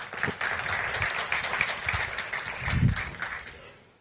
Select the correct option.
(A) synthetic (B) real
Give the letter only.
B